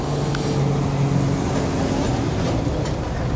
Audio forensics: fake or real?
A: real